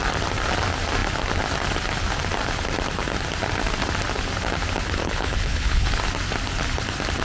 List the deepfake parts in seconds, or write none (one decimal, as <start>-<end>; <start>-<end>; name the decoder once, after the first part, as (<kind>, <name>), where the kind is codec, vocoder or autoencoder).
5.0-5.9 (codec, HILCodec)